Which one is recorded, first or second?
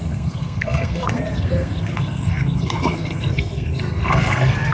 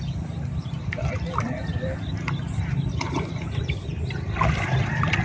second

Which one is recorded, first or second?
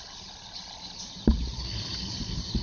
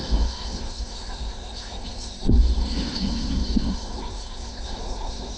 first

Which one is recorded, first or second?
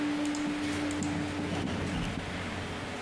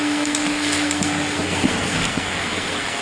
first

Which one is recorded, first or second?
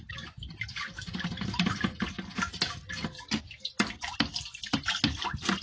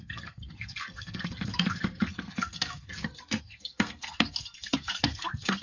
first